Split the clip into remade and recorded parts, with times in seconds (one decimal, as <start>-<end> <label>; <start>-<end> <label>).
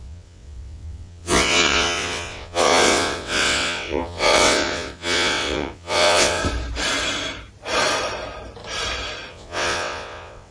0.0-6.4 remade; 6.4-9.3 recorded; 9.3-10.5 remade